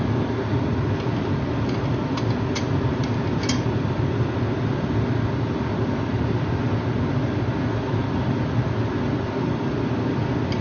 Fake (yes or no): no